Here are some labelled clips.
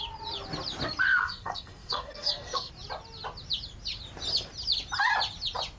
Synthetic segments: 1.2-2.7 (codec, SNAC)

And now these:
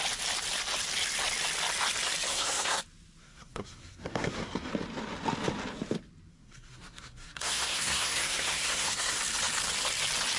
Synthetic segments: 2.3-2.8 (codec, SNAC); 3.2-4.7; 6.3-9.2

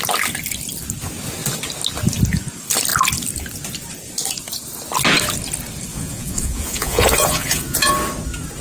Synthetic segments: 5.9-7.9 (vocoder, Vocos)

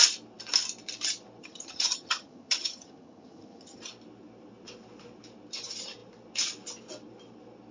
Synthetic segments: 1.4-3.8 (vocoder, HiFi-GAN)